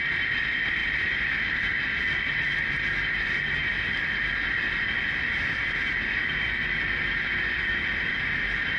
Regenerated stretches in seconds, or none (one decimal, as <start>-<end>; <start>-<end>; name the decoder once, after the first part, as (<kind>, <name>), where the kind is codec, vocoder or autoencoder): none